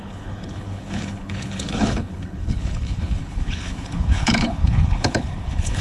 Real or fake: fake